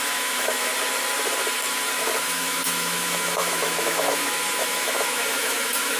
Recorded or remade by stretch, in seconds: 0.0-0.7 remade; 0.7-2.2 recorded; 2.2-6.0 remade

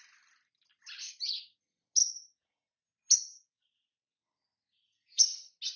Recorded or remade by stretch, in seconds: 0.0-5.8 recorded

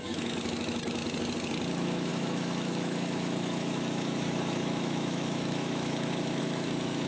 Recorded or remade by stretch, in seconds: 0.0-1.0 remade; 1.0-1.7 recorded; 1.7-7.1 remade

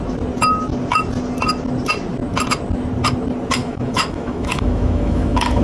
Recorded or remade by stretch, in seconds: 0.0-3.6 recorded; 3.6-5.6 remade